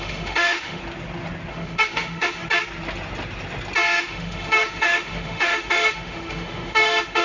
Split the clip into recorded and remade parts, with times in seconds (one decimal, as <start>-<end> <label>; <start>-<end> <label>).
0.0-0.8 remade; 0.8-1.5 recorded; 1.5-2.4 remade; 2.4-4.0 recorded; 4.0-7.2 remade